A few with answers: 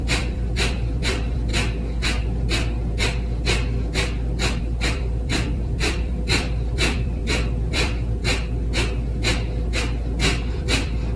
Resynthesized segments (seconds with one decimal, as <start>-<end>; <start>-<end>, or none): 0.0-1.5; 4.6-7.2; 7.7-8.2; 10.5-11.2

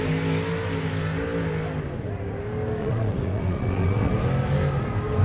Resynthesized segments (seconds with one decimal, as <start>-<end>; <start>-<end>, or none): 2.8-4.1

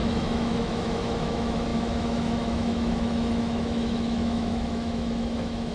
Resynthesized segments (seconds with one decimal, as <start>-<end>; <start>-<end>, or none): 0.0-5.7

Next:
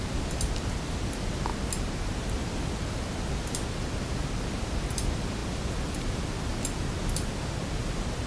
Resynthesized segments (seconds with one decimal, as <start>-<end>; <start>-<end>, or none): none

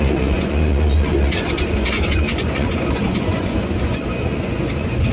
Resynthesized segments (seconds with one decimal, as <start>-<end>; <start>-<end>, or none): 0.0-5.1

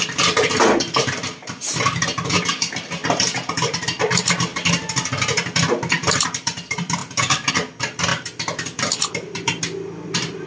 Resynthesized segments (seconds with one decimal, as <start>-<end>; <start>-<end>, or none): none

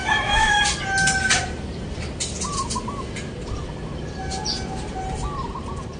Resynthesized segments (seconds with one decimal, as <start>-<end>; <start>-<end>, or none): 0.0-0.6